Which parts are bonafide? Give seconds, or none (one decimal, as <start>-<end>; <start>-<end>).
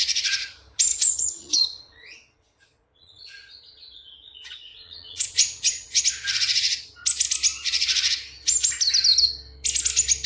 0.0-0.9; 6.0-10.3